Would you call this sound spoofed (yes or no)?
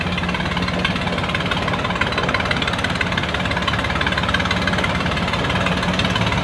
no